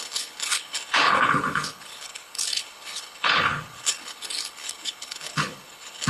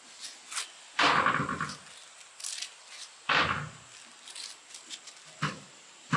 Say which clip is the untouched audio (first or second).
second